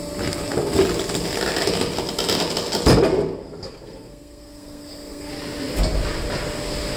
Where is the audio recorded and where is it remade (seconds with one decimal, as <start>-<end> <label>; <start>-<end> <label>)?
0.0-3.4 recorded; 3.4-5.3 remade; 5.3-7.0 recorded